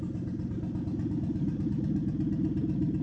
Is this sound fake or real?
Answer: real